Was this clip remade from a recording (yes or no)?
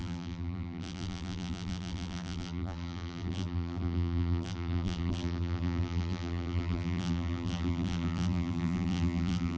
yes